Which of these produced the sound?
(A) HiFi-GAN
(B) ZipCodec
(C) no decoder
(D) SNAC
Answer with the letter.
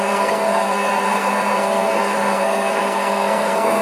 D